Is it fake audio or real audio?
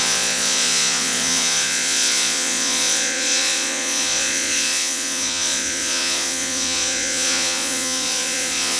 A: fake